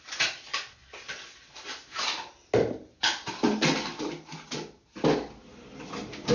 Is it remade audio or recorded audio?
recorded